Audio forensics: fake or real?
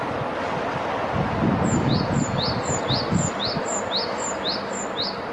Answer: real